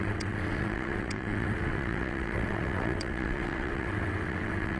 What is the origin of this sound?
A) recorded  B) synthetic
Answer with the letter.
B